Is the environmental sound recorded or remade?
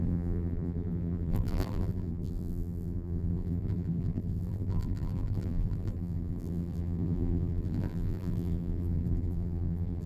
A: remade